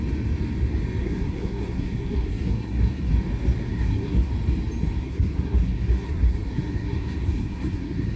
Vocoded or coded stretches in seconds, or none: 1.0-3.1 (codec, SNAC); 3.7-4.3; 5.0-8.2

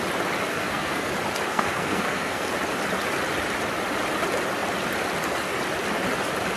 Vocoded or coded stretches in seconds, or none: 0.5-1.1 (codec, SNAC); 1.5-2.5

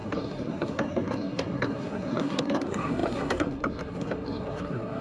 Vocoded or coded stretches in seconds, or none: 0.0-5.0 (codec, SNAC)

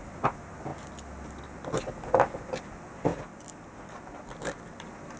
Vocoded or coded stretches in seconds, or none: none